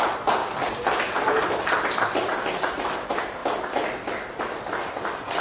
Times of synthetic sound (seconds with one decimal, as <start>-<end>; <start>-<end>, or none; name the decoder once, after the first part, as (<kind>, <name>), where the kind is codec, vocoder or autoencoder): none